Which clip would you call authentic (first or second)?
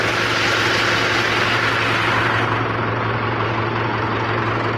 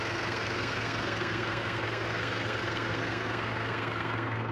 first